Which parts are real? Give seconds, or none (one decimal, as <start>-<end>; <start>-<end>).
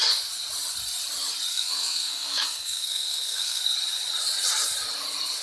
0.0-1.5; 3.6-5.4